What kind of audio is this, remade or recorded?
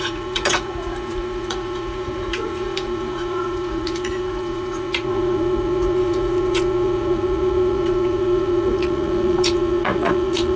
remade